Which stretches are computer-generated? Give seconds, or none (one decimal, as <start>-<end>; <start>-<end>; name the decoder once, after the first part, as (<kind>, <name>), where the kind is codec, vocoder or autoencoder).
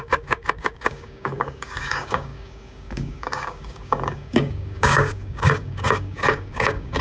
0.0-7.0 (codec, DAC)